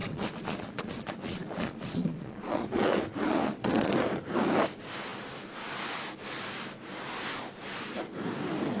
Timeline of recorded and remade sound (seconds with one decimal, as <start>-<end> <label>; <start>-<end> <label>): 0.0-3.9 remade; 3.9-8.8 recorded